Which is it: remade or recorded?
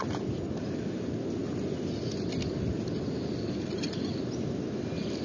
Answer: recorded